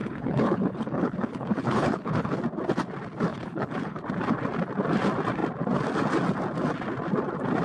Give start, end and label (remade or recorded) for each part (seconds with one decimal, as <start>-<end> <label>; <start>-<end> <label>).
0.0-2.4 remade; 2.4-3.3 recorded; 3.3-4.0 remade; 4.0-7.6 recorded